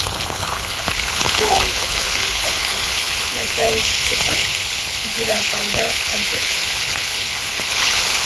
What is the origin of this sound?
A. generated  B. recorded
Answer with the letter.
A